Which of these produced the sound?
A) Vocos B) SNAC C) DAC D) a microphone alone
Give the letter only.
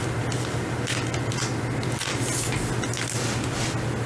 D